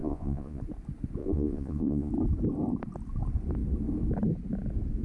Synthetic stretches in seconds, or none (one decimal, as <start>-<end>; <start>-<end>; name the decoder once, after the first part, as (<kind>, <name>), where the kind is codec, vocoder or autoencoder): 0.0-0.6 (vocoder, Vocos); 1.2-2.1